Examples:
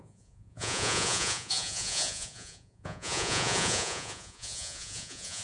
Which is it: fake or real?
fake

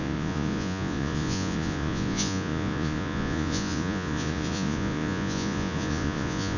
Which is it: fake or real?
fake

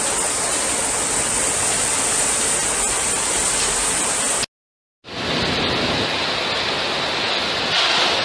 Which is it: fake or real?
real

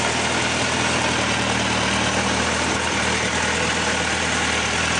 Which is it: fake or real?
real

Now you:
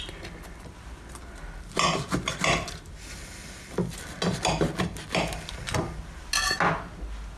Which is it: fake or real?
real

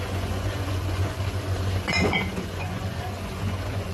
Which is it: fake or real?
fake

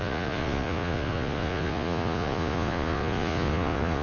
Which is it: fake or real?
fake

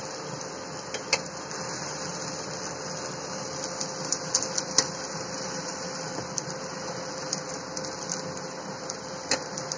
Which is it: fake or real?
real